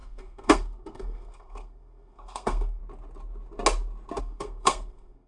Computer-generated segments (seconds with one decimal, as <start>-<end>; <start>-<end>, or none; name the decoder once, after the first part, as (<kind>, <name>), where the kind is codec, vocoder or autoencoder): 0.0-2.8 (codec, SNAC); 4.2-5.3